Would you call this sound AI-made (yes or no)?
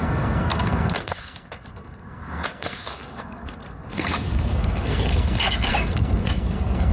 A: yes